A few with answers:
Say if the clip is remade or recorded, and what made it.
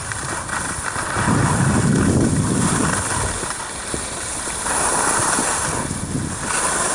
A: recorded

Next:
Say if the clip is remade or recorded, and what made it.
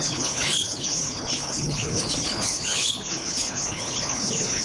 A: remade, codec, HILCodec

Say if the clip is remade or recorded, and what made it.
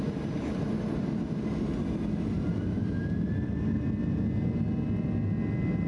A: recorded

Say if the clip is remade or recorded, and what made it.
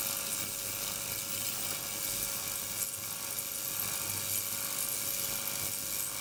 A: recorded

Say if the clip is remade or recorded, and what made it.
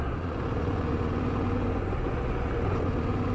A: remade, vocoder, Vocos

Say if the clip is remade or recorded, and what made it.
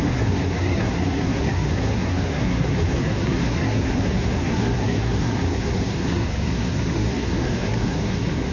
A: remade, codec, SNAC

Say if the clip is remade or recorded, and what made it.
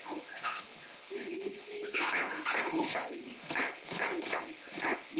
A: remade, codec, HILCodec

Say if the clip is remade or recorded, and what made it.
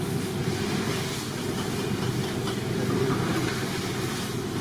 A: recorded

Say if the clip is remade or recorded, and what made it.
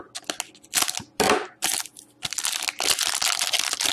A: recorded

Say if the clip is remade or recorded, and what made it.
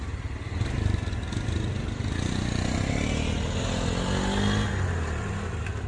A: recorded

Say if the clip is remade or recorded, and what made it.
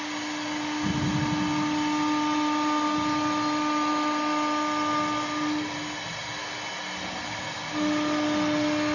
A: recorded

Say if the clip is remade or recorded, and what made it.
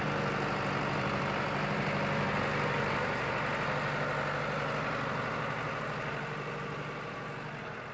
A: recorded